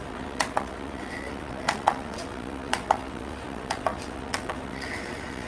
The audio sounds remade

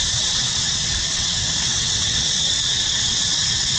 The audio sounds remade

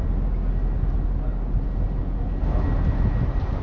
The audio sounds recorded